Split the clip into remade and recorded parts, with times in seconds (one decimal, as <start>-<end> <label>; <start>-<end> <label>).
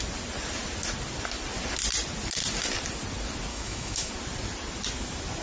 0.0-3.5 recorded; 3.5-4.1 remade; 4.1-5.4 recorded